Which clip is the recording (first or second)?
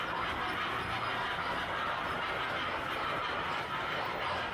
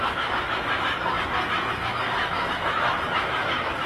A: first